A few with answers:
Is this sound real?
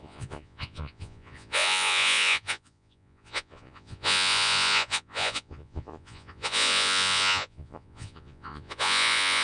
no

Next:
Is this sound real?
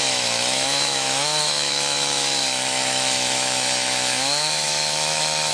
no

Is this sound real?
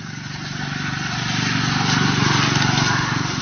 yes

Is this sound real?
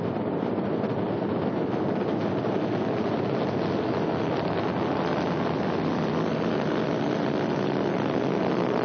yes